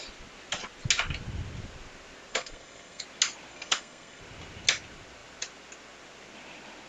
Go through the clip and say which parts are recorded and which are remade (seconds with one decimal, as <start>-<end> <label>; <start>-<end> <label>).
0.0-2.3 recorded; 2.3-3.0 remade; 3.0-3.5 recorded; 3.5-4.2 remade; 4.2-6.9 recorded